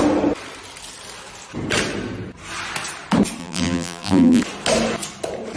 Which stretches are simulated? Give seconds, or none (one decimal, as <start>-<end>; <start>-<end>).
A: 3.4-4.4